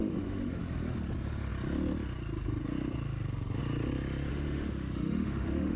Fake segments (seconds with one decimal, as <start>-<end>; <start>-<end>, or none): 0.0-0.6; 4.3-5.8

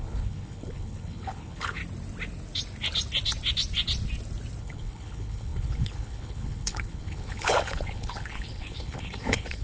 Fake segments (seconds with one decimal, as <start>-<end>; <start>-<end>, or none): 0.0-1.8; 4.6-9.6

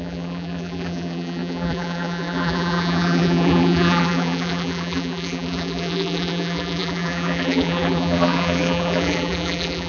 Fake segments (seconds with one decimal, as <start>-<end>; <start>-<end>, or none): 0.0-9.9

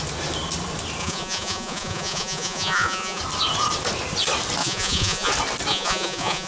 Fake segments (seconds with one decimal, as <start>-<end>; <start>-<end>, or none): 1.0-3.2; 4.6-5.3; 5.7-6.5

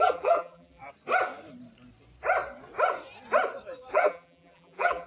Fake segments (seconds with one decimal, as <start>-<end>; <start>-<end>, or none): 0.0-0.8; 3.9-5.1

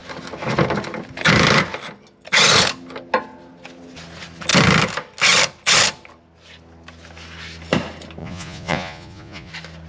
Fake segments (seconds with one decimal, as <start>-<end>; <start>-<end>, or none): 8.2-9.5